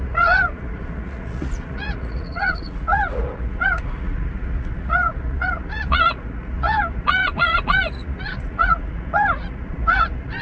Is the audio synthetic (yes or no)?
yes